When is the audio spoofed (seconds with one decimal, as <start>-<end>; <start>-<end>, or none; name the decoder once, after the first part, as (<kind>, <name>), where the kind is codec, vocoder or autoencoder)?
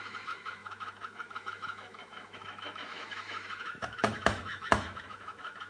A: 0.0-5.7 (autoencoder, DAC-VAE)